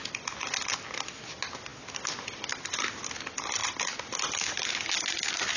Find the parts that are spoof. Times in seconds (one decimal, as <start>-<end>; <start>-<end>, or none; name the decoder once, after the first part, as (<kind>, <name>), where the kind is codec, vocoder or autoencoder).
none

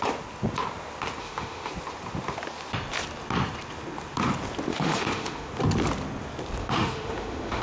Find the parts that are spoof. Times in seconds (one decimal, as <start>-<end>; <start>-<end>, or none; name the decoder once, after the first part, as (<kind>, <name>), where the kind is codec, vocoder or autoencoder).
1.2-1.7 (autoencoder, DAC-VAE); 4.7-5.5; 6.6-7.6

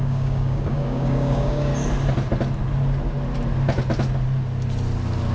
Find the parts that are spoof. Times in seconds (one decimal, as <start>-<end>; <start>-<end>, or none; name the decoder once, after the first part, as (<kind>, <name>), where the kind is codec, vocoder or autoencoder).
0.0-1.7 (codec, DAC)

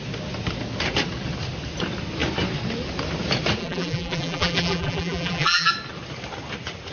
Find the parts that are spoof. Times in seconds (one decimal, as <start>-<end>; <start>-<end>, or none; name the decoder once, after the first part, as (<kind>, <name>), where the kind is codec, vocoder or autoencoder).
3.6-5.7 (vocoder, BigVGAN v2)

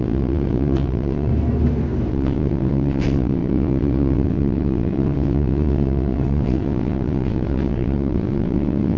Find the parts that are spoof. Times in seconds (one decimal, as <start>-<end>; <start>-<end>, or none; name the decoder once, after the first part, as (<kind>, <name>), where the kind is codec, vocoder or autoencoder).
0.0-1.3 (vocoder, WaveNeXt); 2.1-9.0